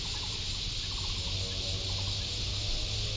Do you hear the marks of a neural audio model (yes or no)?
no